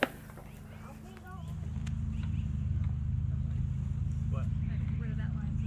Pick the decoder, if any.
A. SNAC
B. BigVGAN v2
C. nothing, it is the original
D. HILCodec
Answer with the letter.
C